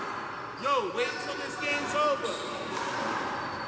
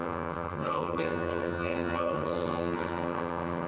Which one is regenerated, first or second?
second